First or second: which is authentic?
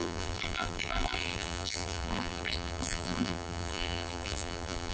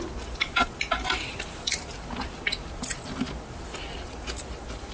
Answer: second